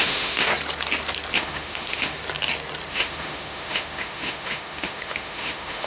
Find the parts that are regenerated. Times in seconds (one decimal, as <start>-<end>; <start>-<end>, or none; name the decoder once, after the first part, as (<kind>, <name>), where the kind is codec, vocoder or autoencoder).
0.0-0.5 (autoencoder, DAC-VAE); 1.3-2.1; 2.9-5.9

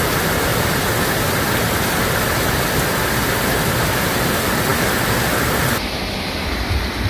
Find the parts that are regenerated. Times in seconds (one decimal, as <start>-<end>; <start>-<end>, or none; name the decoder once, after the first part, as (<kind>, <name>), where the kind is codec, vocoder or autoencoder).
none

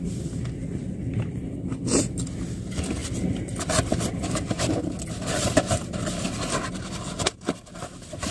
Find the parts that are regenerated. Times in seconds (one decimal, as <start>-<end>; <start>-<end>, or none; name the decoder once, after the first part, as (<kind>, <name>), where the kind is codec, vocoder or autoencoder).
none

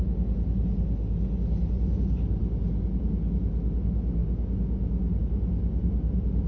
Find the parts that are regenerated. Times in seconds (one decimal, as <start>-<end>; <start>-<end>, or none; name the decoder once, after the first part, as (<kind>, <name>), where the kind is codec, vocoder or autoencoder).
none